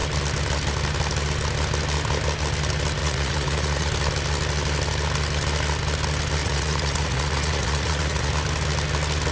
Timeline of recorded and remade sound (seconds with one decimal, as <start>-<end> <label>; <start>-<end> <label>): 0.0-3.0 recorded; 3.0-3.9 remade; 3.9-6.4 recorded; 6.4-8.3 remade; 8.3-9.3 recorded